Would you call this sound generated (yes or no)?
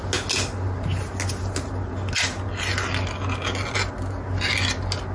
no